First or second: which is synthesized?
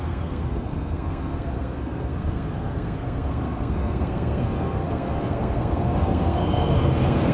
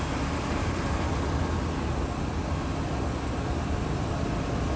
first